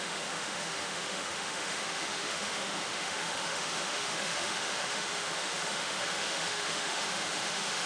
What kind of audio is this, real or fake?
fake